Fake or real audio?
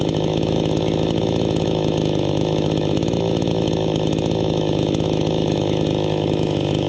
fake